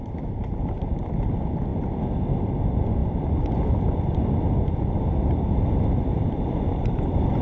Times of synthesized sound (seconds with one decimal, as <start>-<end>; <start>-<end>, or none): none